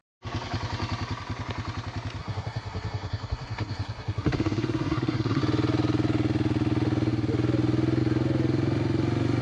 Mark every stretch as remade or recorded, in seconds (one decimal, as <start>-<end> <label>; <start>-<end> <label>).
0.0-2.2 recorded; 2.2-5.4 remade; 5.4-9.4 recorded